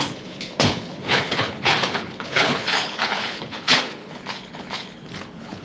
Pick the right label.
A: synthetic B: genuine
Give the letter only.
A